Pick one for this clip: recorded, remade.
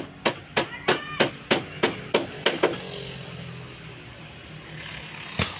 recorded